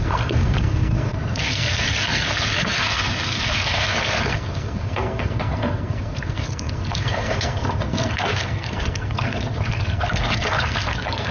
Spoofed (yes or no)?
yes